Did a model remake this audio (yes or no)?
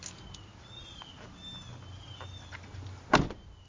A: no